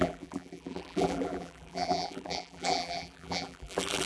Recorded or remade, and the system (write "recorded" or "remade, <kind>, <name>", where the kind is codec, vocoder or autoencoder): remade, vocoder, BigVGAN v2